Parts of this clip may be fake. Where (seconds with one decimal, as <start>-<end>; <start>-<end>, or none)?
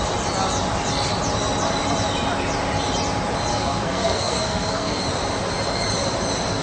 3.5-5.0